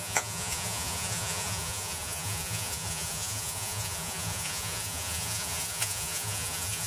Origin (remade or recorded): remade